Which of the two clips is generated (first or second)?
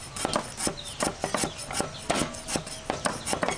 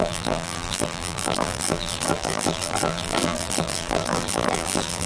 second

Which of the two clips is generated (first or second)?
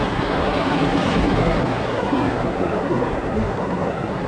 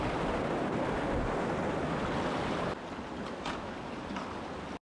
first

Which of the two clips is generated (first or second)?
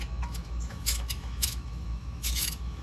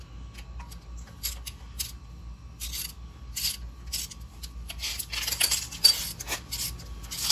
first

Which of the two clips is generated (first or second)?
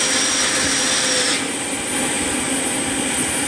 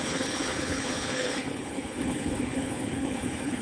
second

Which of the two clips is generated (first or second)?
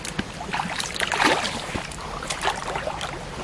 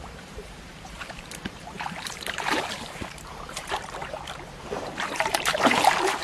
second